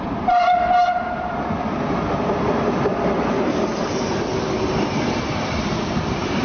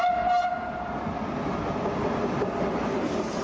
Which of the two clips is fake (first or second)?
first